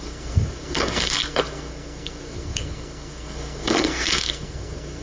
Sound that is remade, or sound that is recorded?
remade